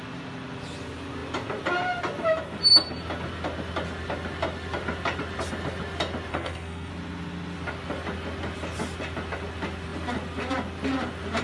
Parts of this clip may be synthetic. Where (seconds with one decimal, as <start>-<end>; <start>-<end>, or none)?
6.3-6.9